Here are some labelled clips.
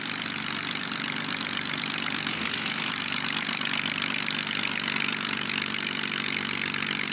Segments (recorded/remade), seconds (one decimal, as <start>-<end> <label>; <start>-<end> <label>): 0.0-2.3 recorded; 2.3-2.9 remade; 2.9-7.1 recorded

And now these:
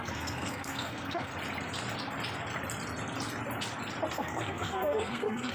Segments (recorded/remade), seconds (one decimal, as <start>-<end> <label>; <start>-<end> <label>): 0.0-1.3 remade; 1.3-4.1 recorded; 4.1-5.5 remade

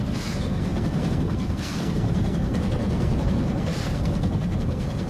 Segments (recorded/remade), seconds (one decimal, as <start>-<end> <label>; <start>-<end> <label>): 0.0-5.1 remade

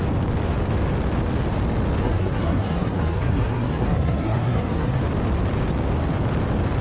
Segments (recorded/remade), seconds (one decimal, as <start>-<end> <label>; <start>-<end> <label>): 0.0-2.0 recorded; 2.0-5.0 remade; 5.0-6.8 recorded

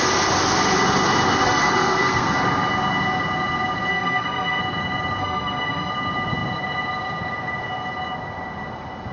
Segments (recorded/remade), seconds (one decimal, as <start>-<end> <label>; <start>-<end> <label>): 0.0-1.4 recorded; 1.4-2.4 remade; 2.4-3.9 recorded; 3.9-4.6 remade; 4.6-5.2 recorded; 5.2-5.9 remade; 5.9-9.1 recorded

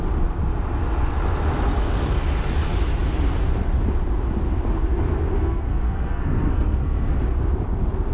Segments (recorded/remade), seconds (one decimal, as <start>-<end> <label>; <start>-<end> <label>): 0.0-5.4 recorded; 5.4-7.2 remade; 7.2-8.1 recorded